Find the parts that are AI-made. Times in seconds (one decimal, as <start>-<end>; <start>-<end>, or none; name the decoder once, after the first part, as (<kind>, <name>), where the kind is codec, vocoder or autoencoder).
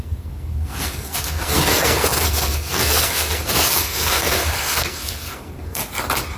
0.0-5.8 (codec, SNAC)